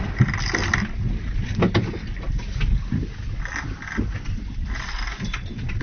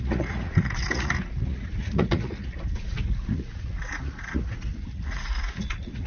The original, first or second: first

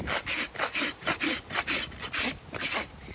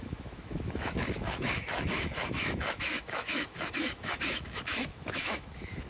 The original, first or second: first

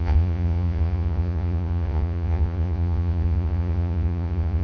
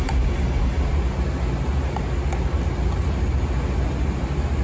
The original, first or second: second